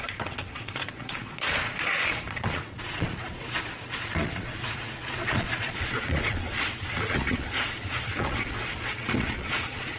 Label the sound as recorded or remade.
remade